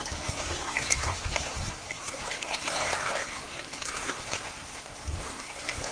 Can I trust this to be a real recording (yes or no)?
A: no